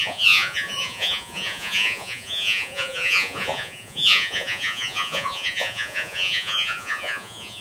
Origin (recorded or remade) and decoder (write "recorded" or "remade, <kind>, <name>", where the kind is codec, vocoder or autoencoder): remade, vocoder, Vocos